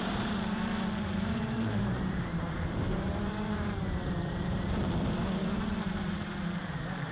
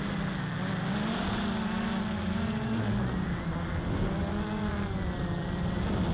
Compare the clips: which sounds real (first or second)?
second